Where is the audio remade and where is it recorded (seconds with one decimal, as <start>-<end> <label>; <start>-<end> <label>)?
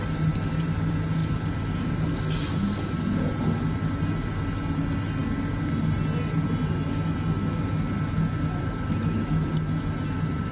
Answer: 0.0-10.5 recorded